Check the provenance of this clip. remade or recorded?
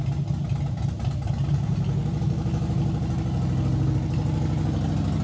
recorded